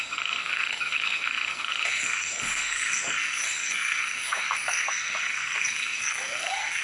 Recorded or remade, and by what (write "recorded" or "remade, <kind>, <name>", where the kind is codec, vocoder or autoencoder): remade, codec, SNAC